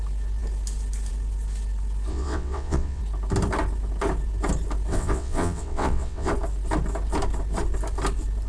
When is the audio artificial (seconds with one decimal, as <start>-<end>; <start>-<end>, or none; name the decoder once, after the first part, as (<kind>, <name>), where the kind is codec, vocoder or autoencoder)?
2.1-3.0 (vocoder, WaveNeXt); 4.9-6.3